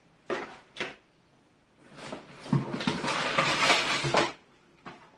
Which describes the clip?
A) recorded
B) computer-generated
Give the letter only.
A